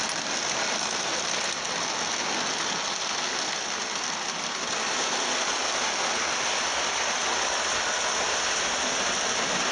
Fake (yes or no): no